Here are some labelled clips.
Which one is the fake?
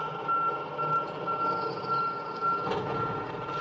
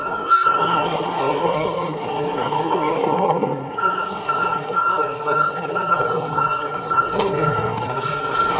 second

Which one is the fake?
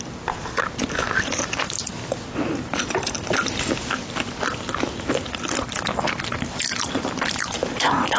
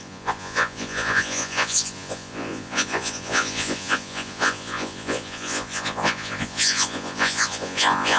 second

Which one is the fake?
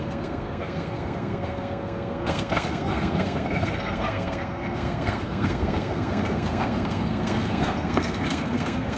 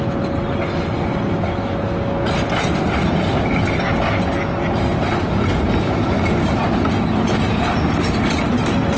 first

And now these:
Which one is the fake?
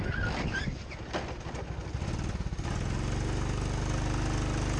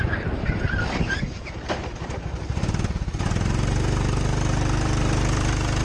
second